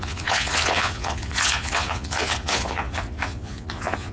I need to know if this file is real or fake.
fake